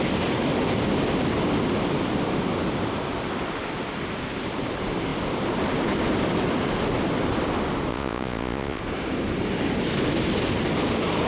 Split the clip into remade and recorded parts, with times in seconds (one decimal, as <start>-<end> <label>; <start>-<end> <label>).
0.0-7.9 recorded; 7.9-8.8 remade; 8.8-11.3 recorded